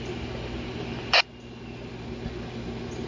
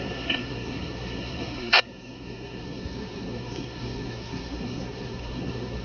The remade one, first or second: second